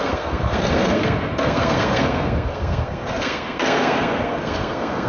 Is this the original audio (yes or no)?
no